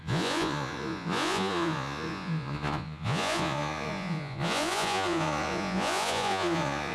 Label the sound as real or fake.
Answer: fake